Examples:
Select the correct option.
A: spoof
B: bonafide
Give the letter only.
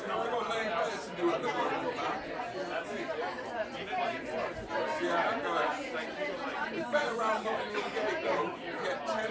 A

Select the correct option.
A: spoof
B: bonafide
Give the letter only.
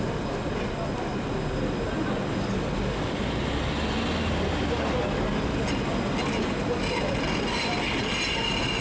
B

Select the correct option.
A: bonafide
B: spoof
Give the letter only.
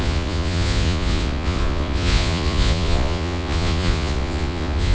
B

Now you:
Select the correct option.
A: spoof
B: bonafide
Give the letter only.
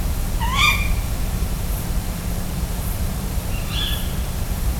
A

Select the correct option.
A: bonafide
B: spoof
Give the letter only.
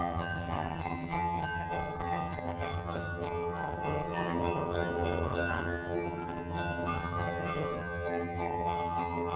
B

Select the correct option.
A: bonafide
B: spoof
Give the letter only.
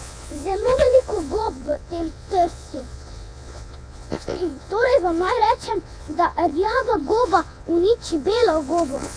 B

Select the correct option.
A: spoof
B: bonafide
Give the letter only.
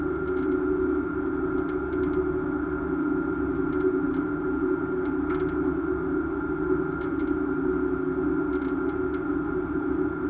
B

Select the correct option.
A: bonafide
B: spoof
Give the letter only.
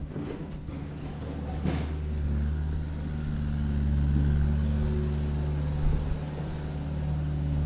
A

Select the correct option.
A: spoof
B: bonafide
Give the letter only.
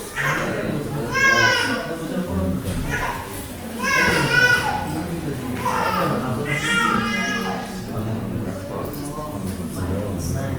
B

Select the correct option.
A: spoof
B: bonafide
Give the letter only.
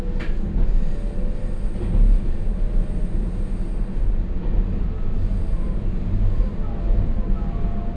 B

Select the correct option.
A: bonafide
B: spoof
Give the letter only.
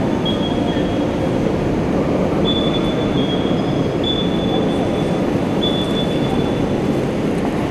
A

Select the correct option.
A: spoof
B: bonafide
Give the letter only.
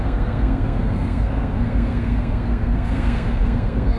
A